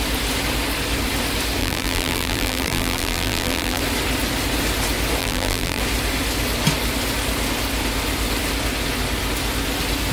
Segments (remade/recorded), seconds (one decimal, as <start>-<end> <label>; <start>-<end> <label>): 0.0-1.6 recorded; 1.6-3.8 remade; 3.8-5.2 recorded; 5.2-5.8 remade; 5.8-10.1 recorded